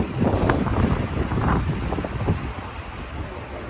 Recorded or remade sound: recorded